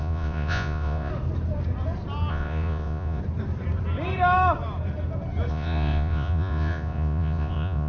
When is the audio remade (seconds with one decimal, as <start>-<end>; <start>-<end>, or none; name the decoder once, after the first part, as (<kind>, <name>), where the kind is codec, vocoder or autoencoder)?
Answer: 0.0-1.1 (vocoder, Vocos); 2.3-3.2; 5.5-7.9